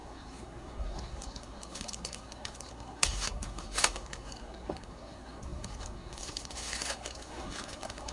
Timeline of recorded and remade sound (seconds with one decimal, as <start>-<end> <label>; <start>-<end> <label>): 0.0-8.1 remade

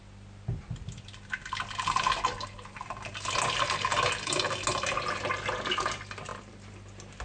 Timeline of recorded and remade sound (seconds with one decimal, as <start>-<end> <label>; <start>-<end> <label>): 0.0-7.2 recorded